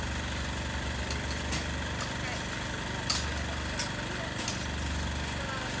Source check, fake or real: real